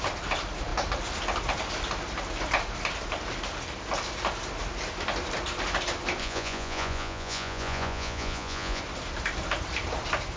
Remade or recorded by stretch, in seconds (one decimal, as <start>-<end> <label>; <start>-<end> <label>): 0.0-6.2 recorded; 6.2-8.8 remade; 8.8-10.4 recorded